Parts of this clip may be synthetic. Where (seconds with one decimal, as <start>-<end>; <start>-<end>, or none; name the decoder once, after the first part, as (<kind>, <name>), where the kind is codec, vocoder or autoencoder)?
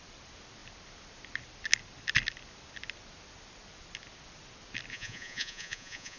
4.9-6.2 (vocoder, Vocos)